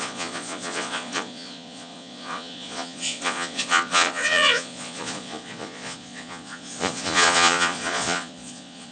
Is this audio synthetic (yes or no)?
yes